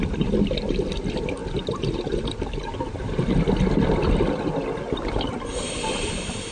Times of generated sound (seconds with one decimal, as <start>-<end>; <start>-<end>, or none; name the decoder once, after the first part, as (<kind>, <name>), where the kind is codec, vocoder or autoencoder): none